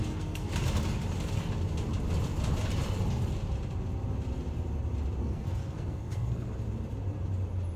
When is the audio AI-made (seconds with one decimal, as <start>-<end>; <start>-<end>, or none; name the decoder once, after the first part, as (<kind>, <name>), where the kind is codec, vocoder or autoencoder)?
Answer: 0.0-0.5 (codec, SNAC); 5.2-6.5